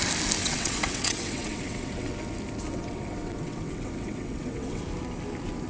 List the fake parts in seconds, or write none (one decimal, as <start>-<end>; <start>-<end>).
0.4-2.1; 2.7-4.8